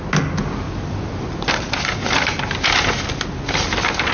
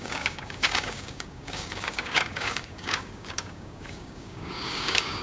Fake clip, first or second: second